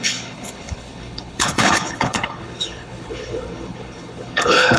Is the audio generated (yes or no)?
yes